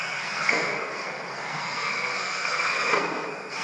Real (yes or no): no